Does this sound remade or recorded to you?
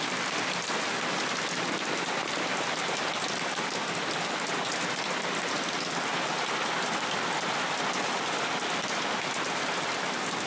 recorded